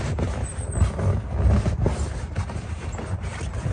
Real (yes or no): yes